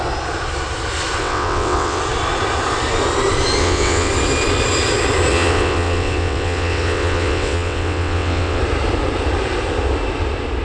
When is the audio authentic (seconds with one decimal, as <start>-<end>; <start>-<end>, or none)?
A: 0.0-1.2; 2.0-3.6; 4.1-5.3; 8.6-10.6